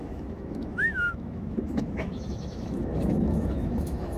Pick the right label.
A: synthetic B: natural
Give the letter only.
A